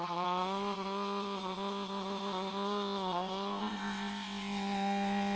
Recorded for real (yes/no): no